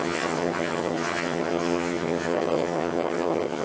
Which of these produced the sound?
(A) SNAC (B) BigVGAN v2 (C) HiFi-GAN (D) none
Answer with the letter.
C